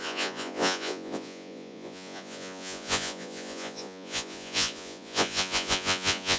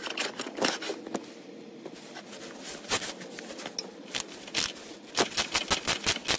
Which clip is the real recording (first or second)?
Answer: second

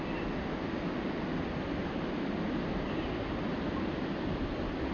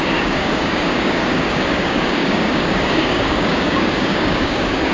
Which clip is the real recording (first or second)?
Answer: first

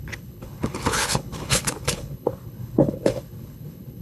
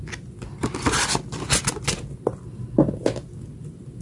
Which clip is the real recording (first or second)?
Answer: second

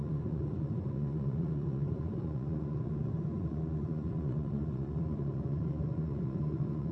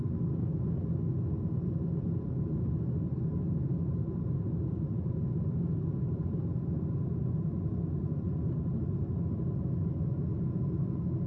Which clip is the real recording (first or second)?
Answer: second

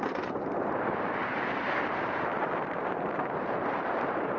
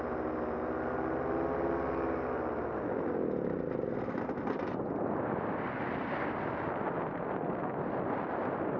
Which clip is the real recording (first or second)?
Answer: second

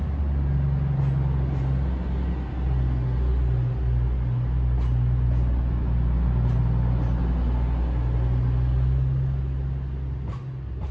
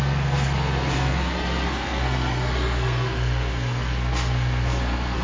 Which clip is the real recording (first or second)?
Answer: first